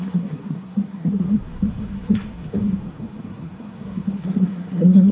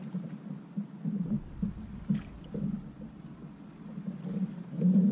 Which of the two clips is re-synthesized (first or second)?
first